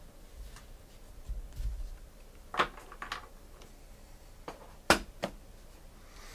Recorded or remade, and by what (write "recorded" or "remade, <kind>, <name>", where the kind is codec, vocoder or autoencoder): recorded